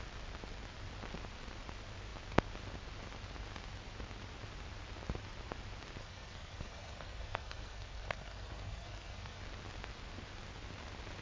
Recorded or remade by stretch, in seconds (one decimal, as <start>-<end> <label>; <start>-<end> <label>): 0.0-6.0 recorded; 6.0-9.4 remade; 9.4-11.2 recorded